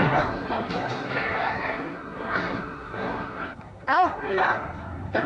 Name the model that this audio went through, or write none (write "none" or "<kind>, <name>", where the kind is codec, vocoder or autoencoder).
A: codec, SNAC